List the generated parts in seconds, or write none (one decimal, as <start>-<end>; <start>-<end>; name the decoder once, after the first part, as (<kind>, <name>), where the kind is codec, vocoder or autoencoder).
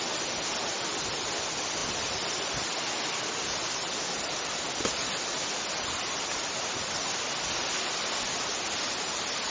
none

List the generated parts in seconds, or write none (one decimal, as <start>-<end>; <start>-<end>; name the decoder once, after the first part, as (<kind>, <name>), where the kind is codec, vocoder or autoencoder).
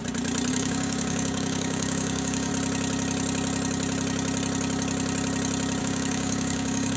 0.5-2.5 (codec, DAC); 5.8-7.0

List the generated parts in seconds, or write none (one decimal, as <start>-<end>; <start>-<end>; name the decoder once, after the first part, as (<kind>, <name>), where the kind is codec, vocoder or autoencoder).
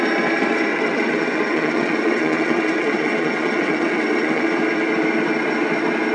0.7-4.4 (vocoder, WaveNeXt)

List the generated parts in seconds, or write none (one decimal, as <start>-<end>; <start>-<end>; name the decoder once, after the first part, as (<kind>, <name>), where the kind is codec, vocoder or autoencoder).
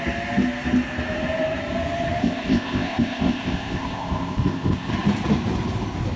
2.2-4.9 (codec, ZipCodec)